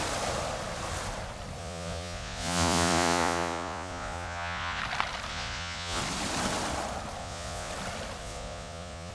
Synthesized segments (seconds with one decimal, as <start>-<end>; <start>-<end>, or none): 1.6-4.8; 5.3-6.0; 7.2-7.7; 8.2-9.1